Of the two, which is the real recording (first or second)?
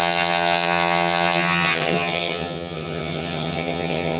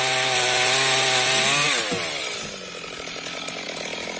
second